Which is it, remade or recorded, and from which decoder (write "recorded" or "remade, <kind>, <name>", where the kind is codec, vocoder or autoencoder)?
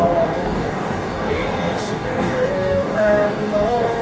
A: remade, codec, DAC